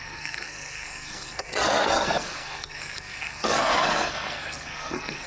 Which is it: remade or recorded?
remade